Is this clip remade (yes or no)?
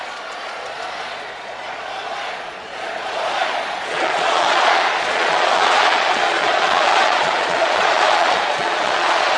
yes